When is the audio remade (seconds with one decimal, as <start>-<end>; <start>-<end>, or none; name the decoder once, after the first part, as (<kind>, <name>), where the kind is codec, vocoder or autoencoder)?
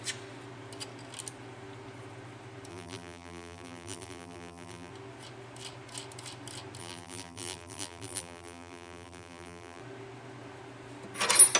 2.7-4.9 (vocoder, BigVGAN v2); 6.8-9.8